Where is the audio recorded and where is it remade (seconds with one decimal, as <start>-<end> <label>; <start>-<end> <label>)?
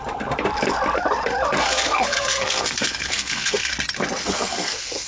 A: 0.0-1.6 recorded; 1.6-3.7 remade; 3.7-4.2 recorded; 4.2-5.1 remade